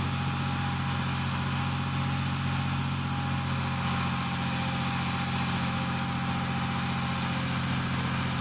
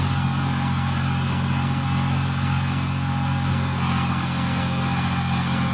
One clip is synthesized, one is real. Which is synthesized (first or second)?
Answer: second